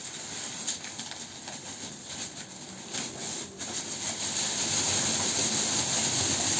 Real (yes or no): yes